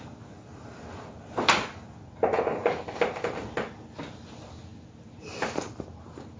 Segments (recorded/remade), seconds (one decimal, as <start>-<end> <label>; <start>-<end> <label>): 0.0-6.4 recorded